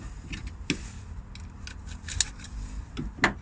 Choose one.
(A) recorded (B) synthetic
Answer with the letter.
A